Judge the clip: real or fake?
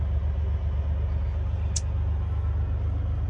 real